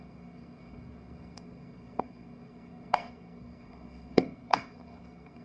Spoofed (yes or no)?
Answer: yes